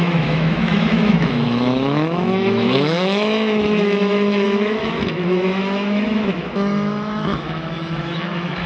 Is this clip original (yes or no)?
no